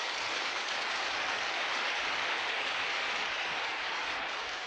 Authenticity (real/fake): fake